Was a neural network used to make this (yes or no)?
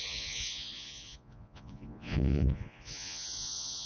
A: yes